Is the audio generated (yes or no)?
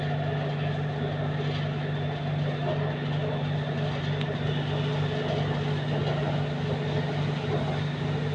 no